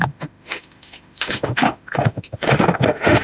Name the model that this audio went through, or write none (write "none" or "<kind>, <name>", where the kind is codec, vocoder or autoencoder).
autoencoder, DAC-VAE